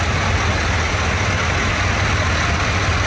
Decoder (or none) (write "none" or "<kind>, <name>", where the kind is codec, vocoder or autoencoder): none